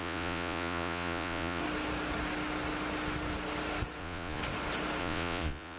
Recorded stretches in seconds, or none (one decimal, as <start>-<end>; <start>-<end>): 1.6-4.0; 4.4-5.0